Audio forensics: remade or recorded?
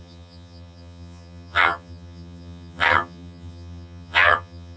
remade